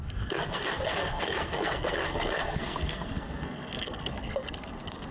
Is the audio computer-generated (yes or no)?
yes